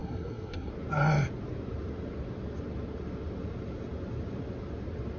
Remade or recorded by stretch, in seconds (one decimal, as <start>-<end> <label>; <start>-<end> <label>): 0.0-0.7 remade; 0.7-5.2 recorded